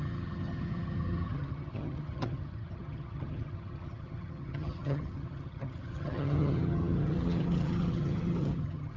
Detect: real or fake fake